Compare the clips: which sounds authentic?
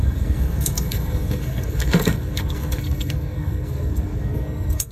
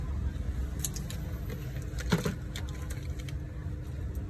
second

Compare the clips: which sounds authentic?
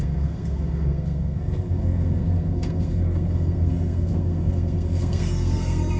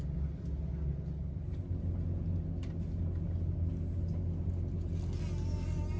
second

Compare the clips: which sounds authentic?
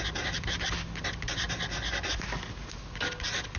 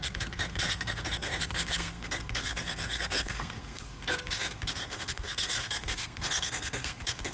first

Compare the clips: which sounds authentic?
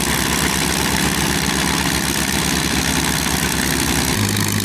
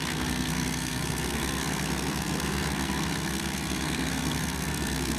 first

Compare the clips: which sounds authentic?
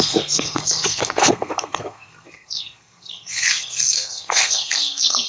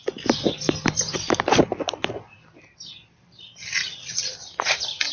second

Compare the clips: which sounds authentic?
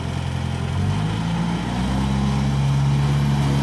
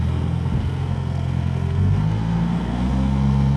first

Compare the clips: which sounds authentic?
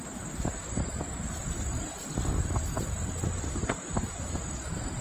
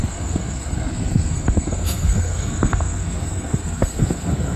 first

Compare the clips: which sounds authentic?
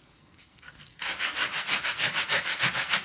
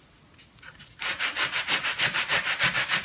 second